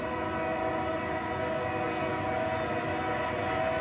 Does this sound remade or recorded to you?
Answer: recorded